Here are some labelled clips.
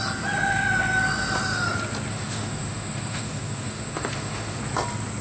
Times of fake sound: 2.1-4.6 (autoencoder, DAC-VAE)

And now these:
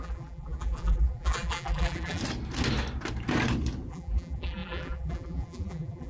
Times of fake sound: 0.0-2.2 (vocoder, BigVGAN v2); 3.9-6.1

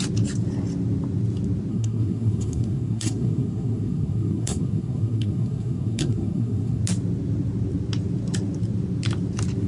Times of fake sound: 1.7-6.8 (codec, SNAC)

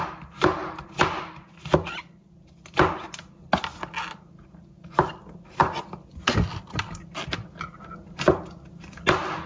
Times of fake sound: none